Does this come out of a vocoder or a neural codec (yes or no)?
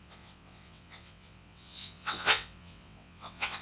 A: yes